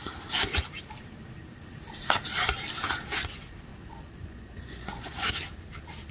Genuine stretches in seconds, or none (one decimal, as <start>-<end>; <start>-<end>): 0.0-3.7; 5.3-6.1